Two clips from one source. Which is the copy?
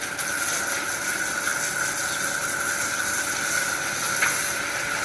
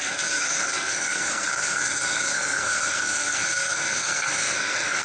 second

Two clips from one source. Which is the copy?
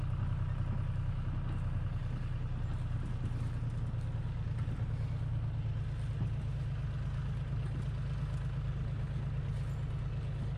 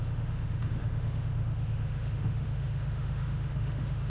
second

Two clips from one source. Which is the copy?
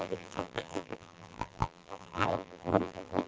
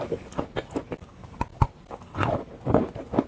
first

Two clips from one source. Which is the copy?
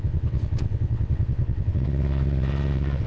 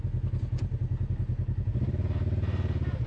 first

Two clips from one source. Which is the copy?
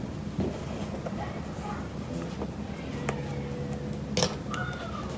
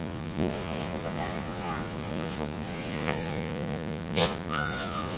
second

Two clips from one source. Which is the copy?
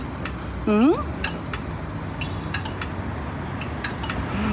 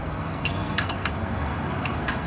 second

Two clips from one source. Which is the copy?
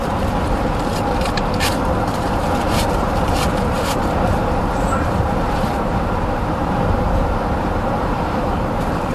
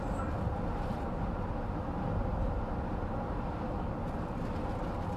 first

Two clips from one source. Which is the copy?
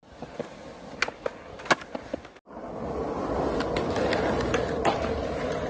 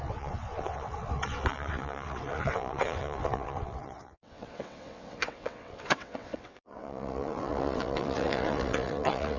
second